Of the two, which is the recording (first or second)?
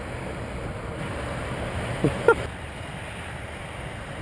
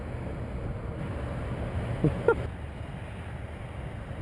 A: second